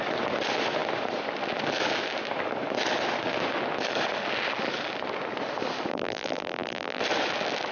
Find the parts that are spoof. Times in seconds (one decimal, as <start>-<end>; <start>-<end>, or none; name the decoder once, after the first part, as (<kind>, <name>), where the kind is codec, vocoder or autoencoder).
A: 5.9-7.0 (vocoder, BigVGAN v2)